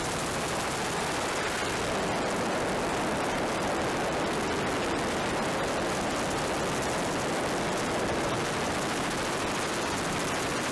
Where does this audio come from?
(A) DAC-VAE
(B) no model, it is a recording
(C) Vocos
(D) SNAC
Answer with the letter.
B